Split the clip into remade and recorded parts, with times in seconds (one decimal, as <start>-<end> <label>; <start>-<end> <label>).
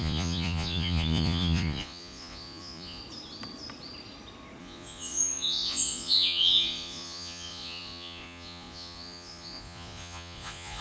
0.0-3.0 remade; 3.0-4.6 recorded; 4.6-10.8 remade